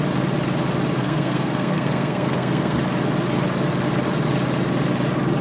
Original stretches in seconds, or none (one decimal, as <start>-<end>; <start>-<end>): 0.0-1.0; 2.8-5.4